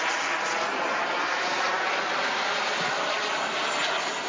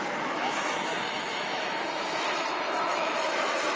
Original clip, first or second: first